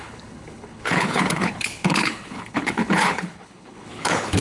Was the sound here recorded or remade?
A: remade